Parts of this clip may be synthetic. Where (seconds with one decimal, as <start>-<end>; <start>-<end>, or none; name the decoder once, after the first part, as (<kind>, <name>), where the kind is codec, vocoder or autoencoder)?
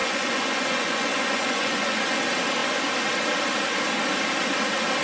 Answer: 0.0-2.2 (vocoder, Vocos)